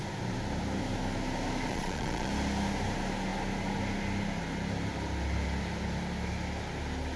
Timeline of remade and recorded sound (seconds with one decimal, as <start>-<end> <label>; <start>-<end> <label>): 0.0-1.7 recorded; 1.7-2.3 remade; 2.3-7.2 recorded